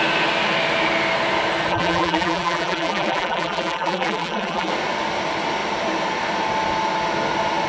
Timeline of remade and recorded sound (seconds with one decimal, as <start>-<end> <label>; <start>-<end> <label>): 0.0-1.7 recorded; 1.7-4.7 remade; 4.7-7.7 recorded